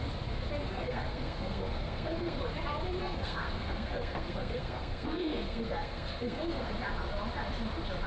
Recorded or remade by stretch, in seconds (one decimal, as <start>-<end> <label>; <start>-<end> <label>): 0.0-0.6 recorded; 0.6-2.4 remade; 2.4-3.0 recorded; 3.0-6.7 remade; 6.7-8.1 recorded